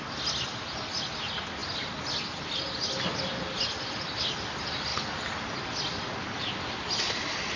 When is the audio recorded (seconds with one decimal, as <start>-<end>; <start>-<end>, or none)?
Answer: 0.0-7.6